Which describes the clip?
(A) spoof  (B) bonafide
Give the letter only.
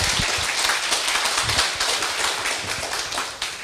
B